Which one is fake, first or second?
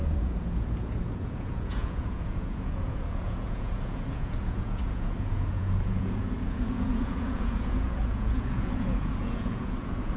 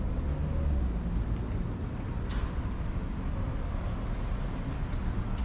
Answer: first